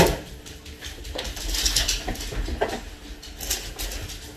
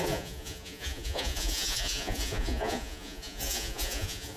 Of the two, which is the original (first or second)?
first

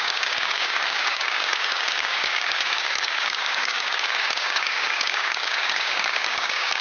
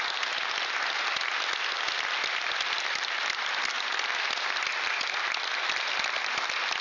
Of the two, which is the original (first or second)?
second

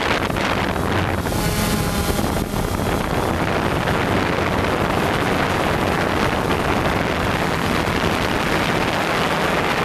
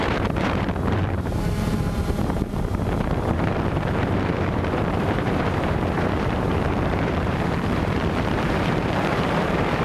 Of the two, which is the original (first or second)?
first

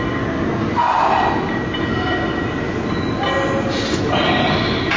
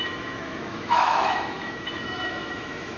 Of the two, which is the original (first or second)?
first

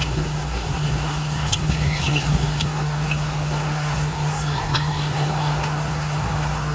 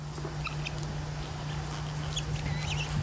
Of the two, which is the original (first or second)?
second